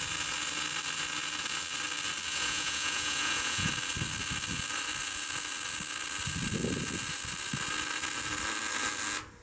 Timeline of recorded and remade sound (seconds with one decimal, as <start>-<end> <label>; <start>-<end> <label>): 0.0-2.3 recorded; 2.3-3.7 remade; 3.7-9.4 recorded